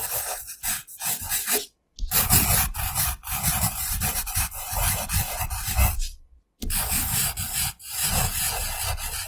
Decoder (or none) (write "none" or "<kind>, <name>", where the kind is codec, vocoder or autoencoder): none